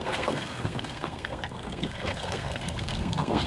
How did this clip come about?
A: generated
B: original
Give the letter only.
A